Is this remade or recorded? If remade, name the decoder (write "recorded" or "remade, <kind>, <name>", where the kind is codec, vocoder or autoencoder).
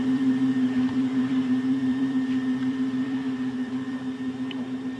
remade, vocoder, BigVGAN v2